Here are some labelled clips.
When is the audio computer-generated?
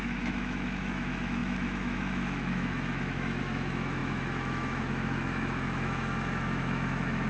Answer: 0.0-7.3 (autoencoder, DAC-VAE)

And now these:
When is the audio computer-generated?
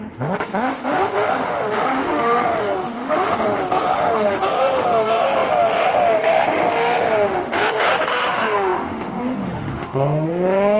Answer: 0.0-10.8 (autoencoder, DAC-VAE)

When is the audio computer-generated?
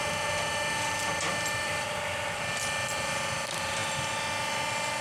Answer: none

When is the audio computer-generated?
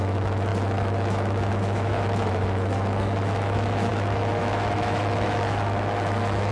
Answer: 0.0-6.5 (autoencoder, DAC-VAE)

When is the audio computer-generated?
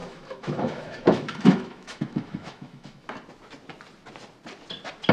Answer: 0.0-3.1 (autoencoder, DAC-VAE)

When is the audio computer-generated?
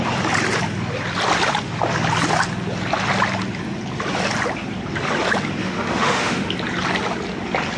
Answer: 5.6-6.5 (autoencoder, DAC-VAE)